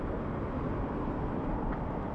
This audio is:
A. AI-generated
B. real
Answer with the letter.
B